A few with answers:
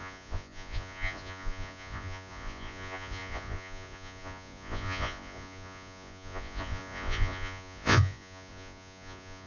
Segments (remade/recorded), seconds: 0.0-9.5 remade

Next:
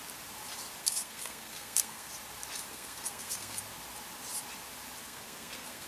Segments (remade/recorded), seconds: 0.0-0.8 recorded; 0.8-2.1 remade; 2.1-2.7 recorded; 2.7-3.6 remade; 3.6-5.0 recorded; 5.0-5.9 remade

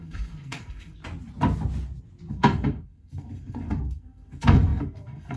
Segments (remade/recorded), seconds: 0.0-1.0 remade; 1.0-2.3 recorded; 2.3-5.4 remade

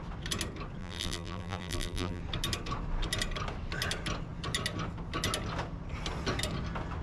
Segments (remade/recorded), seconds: 0.0-0.8 recorded; 0.8-2.2 remade; 2.2-7.0 recorded

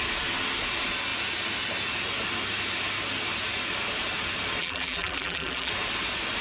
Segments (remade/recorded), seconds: 0.0-4.6 recorded; 4.6-5.7 remade; 5.7-6.4 recorded

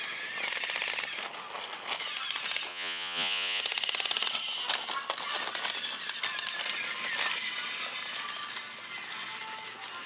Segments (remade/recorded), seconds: 0.0-2.7 recorded; 2.7-3.6 remade; 3.6-10.1 recorded

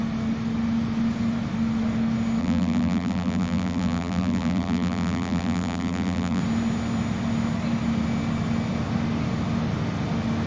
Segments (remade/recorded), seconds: 0.0-2.4 recorded; 2.4-6.4 remade; 6.4-10.5 recorded